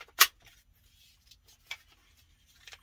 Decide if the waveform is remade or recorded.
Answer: recorded